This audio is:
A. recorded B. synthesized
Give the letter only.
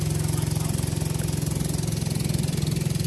A